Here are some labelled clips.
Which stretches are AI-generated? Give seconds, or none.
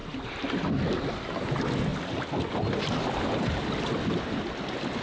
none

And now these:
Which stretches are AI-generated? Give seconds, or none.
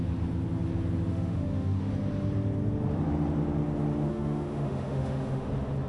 1.1-1.8; 4.1-5.5